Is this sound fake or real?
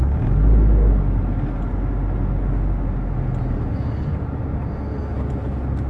real